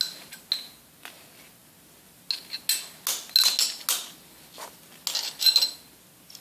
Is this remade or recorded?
recorded